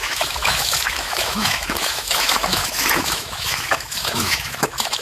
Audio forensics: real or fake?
fake